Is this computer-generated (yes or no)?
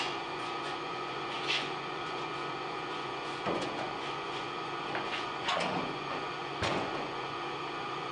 yes